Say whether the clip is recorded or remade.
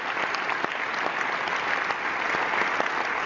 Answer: recorded